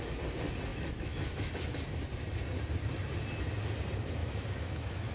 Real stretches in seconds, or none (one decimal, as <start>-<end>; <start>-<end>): 0.0-0.7; 1.5-4.2